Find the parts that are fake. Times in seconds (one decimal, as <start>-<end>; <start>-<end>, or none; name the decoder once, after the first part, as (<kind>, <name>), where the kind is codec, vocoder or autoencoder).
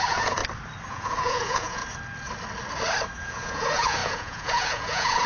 0.0-0.4 (vocoder, Vocos); 0.9-1.8; 3.2-5.3